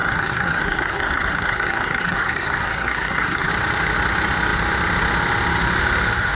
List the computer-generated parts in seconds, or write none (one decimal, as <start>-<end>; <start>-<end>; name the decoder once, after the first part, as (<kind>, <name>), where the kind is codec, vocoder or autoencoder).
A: 0.0-3.5 (codec, SNAC)